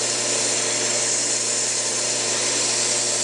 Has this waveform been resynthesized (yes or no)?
no